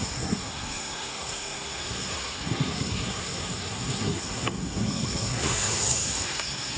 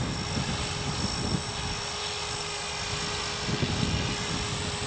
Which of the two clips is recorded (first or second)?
second